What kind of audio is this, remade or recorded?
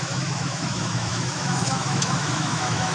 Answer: remade